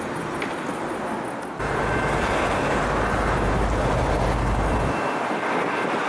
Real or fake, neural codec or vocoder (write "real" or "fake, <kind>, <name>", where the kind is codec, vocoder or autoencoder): real